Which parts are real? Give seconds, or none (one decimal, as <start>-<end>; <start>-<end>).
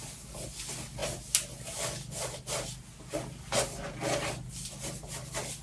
0.0-5.6